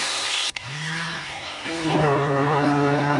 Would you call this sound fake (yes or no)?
yes